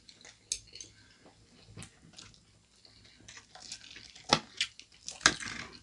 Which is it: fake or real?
real